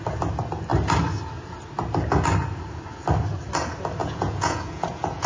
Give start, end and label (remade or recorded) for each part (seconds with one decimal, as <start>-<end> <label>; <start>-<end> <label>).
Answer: 0.0-4.0 recorded; 4.0-5.3 remade